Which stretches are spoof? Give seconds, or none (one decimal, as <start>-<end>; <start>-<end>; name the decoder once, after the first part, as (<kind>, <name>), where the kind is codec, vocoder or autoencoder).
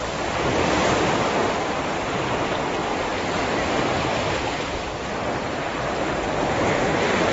2.8-7.3 (vocoder, BigVGAN v2)